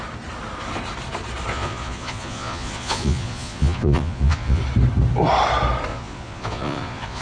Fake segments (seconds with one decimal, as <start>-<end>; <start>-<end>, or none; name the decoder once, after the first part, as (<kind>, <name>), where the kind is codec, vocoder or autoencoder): 1.5-4.6 (vocoder, Vocos); 5.9-7.2

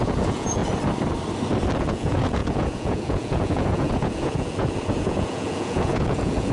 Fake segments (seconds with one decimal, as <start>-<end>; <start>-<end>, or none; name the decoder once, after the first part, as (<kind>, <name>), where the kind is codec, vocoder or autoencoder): 0.0-0.6 (vocoder, Vocos); 1.8-6.5

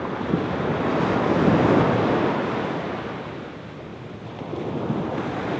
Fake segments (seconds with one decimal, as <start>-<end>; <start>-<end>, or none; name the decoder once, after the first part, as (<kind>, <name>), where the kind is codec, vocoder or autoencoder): none

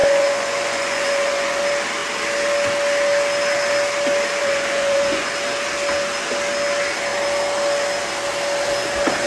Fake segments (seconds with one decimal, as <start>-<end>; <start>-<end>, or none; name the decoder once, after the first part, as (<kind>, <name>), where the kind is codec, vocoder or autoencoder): 0.0-1.6 (vocoder, Vocos); 4.4-5.3

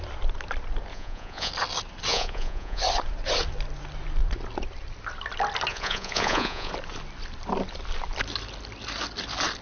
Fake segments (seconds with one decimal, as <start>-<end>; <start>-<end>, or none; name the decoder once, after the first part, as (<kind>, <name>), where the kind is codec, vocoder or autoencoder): 0.9-1.5 (vocoder, Vocos); 2.1-2.8; 5.7-6.7